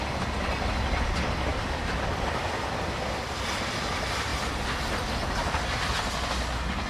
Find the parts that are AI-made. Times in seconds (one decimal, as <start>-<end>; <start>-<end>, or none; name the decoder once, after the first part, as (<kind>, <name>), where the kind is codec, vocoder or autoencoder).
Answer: 1.5-2.4 (vocoder, BigVGAN v2)